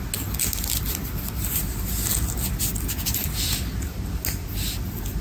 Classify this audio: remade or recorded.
recorded